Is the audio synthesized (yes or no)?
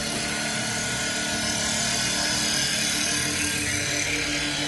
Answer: no